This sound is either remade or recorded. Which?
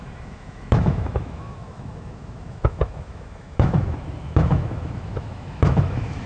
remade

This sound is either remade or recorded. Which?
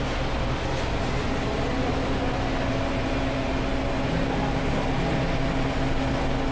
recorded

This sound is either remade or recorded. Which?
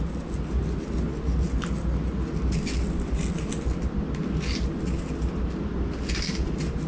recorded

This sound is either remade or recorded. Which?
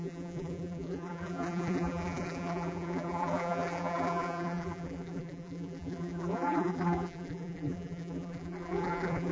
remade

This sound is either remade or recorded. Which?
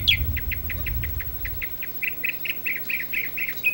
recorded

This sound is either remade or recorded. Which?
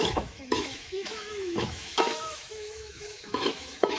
remade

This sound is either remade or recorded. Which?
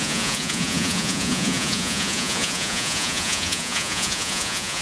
remade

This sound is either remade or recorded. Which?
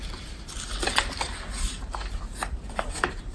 recorded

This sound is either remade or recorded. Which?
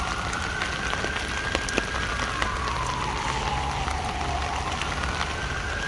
recorded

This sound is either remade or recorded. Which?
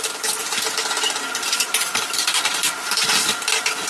remade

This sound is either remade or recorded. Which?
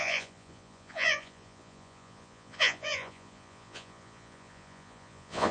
remade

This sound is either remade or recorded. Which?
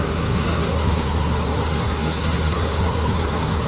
remade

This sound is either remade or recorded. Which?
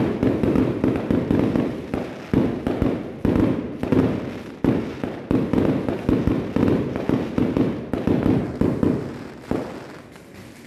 recorded